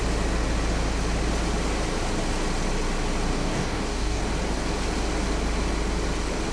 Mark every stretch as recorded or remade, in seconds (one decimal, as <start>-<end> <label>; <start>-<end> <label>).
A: 0.0-3.3 recorded; 3.3-4.2 remade; 4.2-6.5 recorded